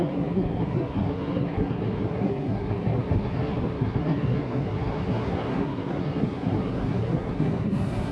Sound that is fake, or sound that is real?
fake